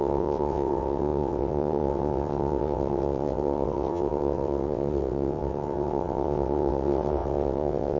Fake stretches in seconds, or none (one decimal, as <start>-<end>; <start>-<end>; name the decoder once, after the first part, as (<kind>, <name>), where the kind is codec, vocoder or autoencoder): 0.0-8.0 (vocoder, WaveNeXt)